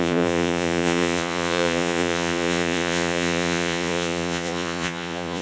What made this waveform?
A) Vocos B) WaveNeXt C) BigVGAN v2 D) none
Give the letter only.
A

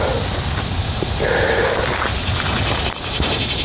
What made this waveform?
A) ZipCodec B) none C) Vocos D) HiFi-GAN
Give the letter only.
B